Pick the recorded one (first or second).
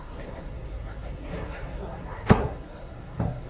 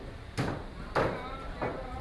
second